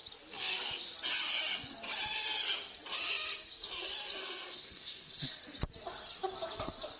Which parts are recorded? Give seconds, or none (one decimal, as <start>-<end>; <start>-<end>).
0.0-4.2; 5.4-7.0